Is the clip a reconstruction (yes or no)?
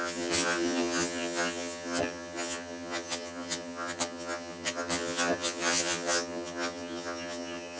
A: yes